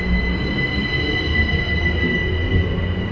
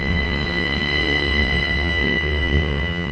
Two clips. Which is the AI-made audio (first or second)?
second